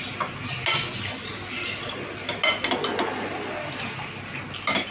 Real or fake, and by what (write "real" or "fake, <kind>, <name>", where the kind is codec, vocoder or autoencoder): real